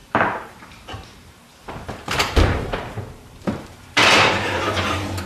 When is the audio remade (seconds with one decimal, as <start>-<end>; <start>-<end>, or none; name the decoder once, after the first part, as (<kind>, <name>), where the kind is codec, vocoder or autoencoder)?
0.0-5.3 (vocoder, BigVGAN v2)